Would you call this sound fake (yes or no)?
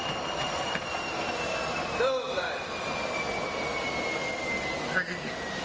no